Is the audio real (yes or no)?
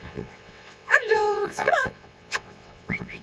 no